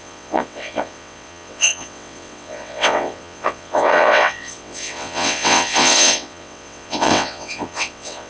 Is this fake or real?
fake